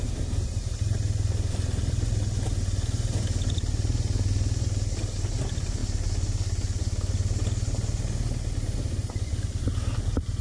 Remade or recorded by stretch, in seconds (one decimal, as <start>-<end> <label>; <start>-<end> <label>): 0.0-10.4 recorded